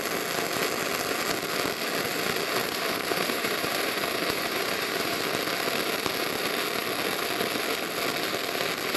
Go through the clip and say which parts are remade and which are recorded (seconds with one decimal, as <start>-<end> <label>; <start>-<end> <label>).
0.0-2.6 recorded; 2.6-5.2 remade; 5.2-9.0 recorded